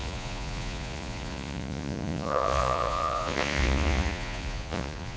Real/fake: fake